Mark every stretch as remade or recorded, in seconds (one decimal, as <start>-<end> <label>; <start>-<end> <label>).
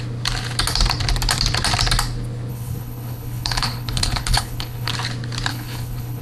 0.0-2.5 recorded; 2.5-4.9 remade; 4.9-5.5 recorded; 5.5-6.2 remade